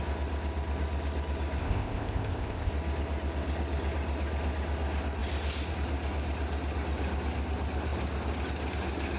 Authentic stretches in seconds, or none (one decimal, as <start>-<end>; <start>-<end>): 0.0-1.6; 2.7-9.2